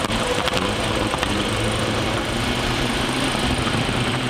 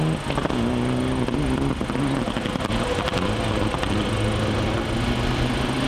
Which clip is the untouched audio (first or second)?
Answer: second